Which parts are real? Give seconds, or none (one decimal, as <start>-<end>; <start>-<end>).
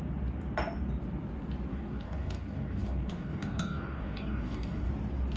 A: 0.0-1.7; 4.9-5.4